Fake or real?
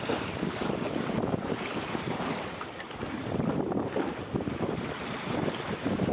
real